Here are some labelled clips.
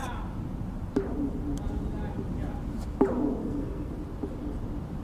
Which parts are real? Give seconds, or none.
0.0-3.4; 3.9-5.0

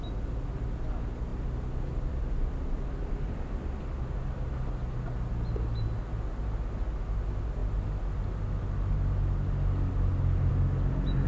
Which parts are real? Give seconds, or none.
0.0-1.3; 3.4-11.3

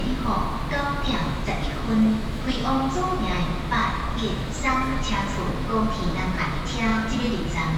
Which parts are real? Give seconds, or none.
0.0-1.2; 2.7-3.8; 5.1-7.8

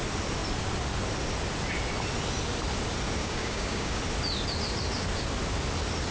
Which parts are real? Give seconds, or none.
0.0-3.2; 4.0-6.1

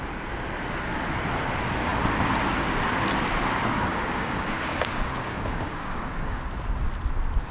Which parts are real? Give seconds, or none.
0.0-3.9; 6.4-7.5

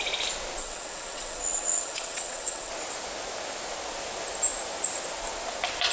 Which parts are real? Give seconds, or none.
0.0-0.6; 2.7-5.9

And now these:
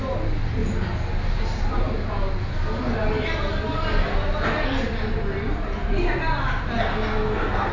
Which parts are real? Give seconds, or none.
0.0-6.9

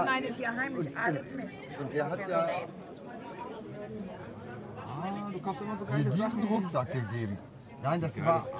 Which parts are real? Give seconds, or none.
0.0-1.0; 2.0-2.5; 3.6-6.3; 7.4-8.6